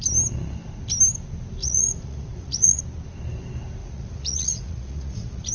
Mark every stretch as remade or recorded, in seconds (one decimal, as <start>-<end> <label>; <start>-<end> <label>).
0.0-1.6 recorded; 1.6-2.8 remade; 2.8-3.8 recorded; 3.8-5.5 remade